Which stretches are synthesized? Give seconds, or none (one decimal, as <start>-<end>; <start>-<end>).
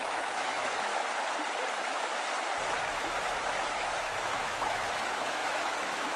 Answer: 0.0-0.9; 1.7-2.1; 2.9-6.2